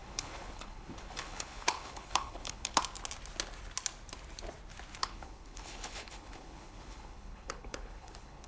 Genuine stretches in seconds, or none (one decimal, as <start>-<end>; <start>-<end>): 2.8-5.0

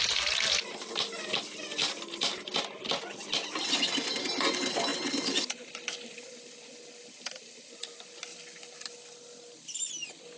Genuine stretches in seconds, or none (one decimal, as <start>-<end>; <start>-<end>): 0.0-10.4

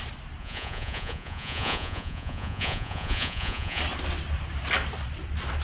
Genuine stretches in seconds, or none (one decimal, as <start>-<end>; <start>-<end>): 0.0-0.4; 3.8-5.6